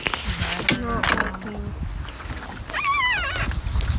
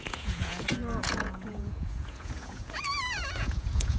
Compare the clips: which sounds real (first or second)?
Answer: first